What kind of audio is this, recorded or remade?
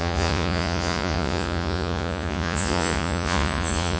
remade